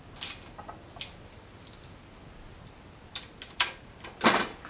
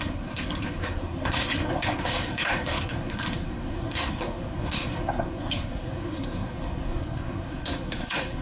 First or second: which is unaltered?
first